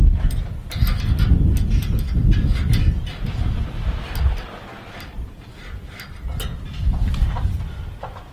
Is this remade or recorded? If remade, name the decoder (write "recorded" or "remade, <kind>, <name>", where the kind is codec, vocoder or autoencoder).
recorded